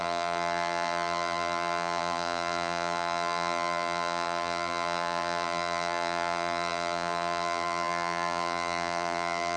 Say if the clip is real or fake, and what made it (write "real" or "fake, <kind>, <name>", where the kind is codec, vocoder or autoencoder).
fake, vocoder, BigVGAN v2